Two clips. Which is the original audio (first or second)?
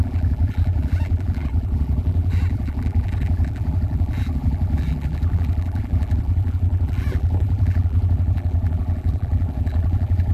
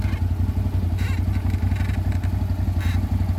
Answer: second